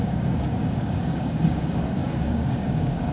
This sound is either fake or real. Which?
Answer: fake